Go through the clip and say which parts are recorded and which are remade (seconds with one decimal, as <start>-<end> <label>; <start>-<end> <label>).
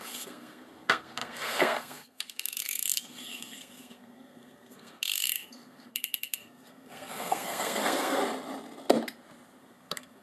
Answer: 0.0-8.2 remade; 8.2-9.6 recorded; 9.6-10.2 remade